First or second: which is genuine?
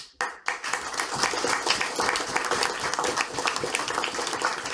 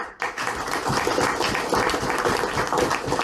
first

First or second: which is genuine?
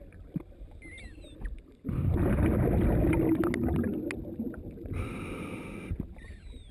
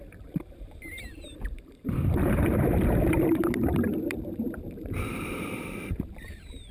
first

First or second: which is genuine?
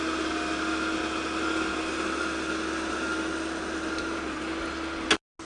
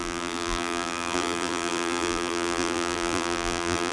first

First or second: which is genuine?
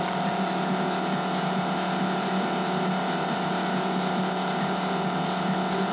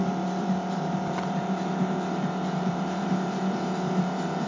first